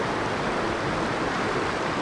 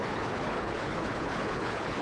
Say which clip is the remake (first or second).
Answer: second